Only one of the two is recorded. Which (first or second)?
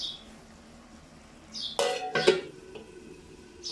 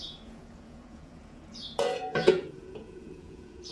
first